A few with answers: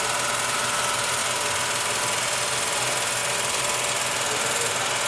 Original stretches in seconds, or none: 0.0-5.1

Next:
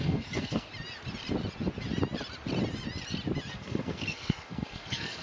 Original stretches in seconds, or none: 0.7-3.5

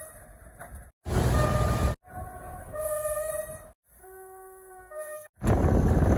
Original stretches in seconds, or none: 0.0-2.6; 3.3-4.0; 5.3-6.2

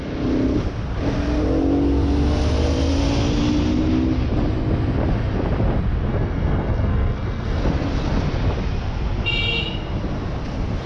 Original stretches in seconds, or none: 0.0-6.1; 7.6-10.9

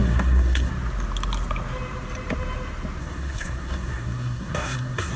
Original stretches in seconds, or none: 0.7-3.0

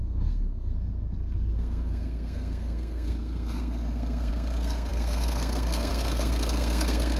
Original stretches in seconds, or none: none

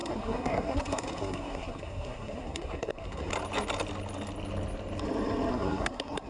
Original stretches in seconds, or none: 3.3-5.5